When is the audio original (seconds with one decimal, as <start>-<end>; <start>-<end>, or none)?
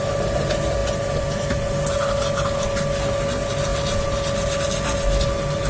0.0-5.7